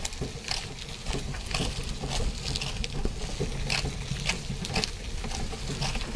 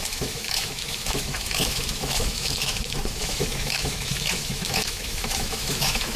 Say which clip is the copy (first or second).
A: second